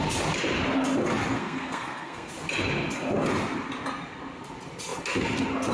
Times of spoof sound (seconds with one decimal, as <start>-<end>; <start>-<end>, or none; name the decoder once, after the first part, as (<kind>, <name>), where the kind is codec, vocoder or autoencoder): 1.3-2.3 (codec, SNAC)

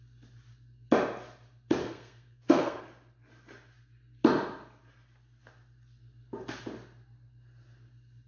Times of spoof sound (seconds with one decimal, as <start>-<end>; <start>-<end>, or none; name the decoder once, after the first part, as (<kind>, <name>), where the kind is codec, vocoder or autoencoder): 1.8-2.8 (codec, SNAC)

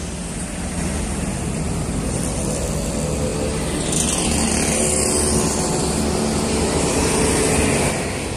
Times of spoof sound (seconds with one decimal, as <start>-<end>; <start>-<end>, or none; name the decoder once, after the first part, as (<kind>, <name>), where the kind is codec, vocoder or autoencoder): none

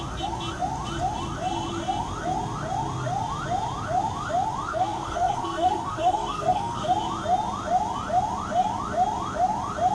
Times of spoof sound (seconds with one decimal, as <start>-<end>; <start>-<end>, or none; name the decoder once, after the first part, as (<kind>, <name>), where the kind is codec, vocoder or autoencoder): 4.7-6.9 (codec, SNAC)

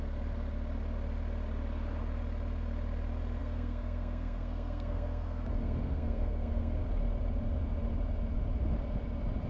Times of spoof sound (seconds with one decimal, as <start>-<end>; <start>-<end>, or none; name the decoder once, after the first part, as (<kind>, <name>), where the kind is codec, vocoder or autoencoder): 3.4-6.8 (codec, SNAC)

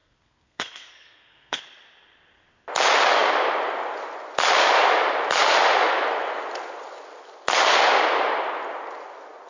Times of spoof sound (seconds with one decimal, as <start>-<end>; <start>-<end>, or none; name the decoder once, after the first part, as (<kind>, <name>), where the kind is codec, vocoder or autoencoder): 0.0-1.6 (codec, SNAC)

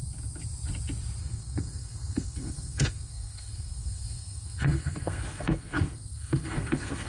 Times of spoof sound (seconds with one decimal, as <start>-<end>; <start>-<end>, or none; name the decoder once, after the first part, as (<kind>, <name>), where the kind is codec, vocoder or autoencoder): 1.2-7.1 (codec, SNAC)